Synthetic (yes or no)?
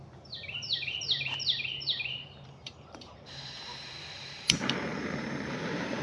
yes